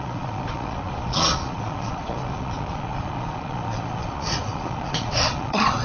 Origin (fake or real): fake